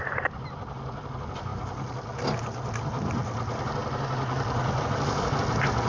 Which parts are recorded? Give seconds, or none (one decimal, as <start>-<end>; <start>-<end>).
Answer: 0.0-5.9